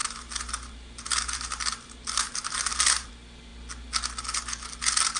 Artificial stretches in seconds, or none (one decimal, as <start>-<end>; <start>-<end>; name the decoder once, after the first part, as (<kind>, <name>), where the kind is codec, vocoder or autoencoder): 0.0-3.1 (vocoder, BigVGAN v2)